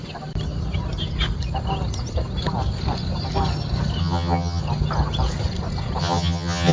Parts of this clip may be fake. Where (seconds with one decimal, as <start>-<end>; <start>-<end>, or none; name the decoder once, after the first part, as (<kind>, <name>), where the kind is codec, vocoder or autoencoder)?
4.0-4.6 (vocoder, HiFi-GAN); 6.0-6.7